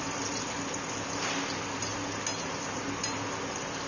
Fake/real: real